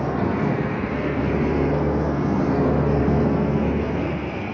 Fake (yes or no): yes